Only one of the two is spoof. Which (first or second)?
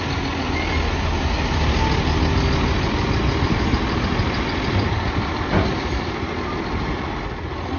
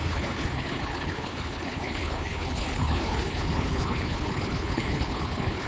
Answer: second